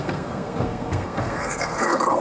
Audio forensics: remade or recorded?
remade